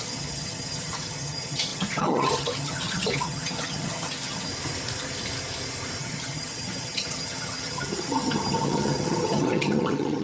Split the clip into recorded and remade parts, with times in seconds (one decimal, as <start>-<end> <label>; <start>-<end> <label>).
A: 0.0-4.5 remade; 4.5-6.0 recorded; 6.0-10.2 remade